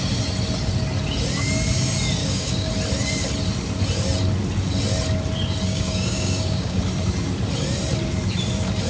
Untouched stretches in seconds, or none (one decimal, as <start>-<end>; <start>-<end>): 0.0-2.2; 2.7-5.7; 6.8-8.9